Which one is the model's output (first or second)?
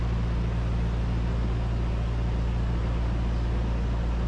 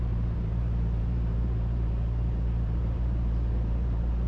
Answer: second